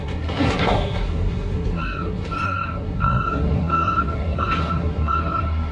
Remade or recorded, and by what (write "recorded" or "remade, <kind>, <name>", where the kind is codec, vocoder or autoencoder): remade, codec, SNAC